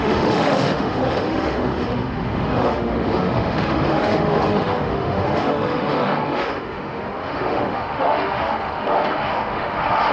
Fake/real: fake